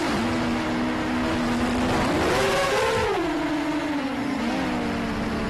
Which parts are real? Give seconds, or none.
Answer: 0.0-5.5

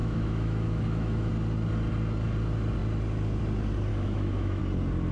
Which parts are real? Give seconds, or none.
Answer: 1.3-3.9; 4.6-5.1

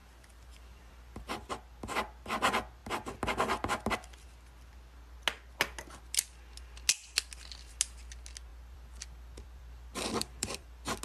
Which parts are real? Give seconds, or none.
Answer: 1.5-8.5

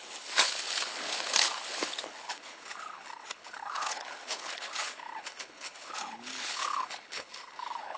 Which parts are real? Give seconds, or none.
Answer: none